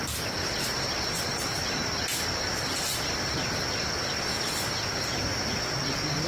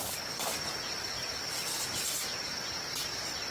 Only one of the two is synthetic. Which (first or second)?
second